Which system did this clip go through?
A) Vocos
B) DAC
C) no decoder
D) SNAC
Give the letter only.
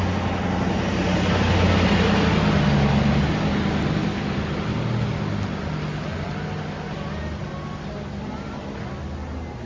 C